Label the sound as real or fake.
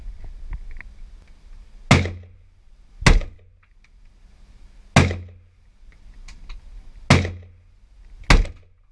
real